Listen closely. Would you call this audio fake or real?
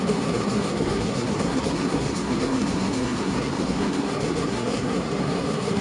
fake